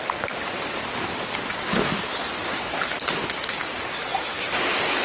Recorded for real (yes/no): yes